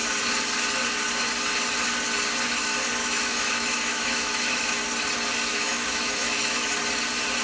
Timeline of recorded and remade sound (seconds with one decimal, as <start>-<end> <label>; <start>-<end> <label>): 0.0-3.0 recorded; 3.0-4.8 remade; 4.8-5.5 recorded; 5.5-6.7 remade; 6.7-7.4 recorded